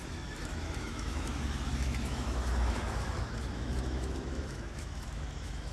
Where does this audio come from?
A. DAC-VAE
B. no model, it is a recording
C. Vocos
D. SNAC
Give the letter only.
A